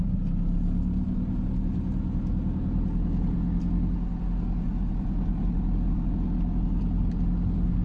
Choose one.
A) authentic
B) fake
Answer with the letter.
A